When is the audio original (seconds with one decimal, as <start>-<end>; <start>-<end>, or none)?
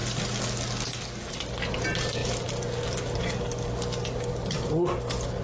0.0-5.4